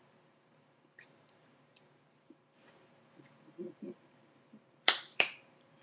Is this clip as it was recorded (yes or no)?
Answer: no